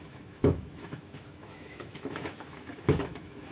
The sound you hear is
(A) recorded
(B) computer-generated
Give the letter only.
B